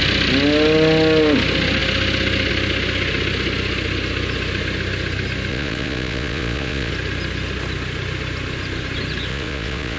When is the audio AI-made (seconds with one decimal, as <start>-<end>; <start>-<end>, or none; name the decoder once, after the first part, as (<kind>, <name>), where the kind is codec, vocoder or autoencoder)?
5.5-6.9 (vocoder, Vocos); 9.3-10.0